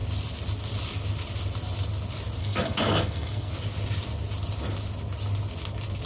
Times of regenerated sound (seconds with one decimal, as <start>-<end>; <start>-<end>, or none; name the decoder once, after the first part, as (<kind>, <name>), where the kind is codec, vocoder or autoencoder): 2.4-3.5 (codec, SNAC)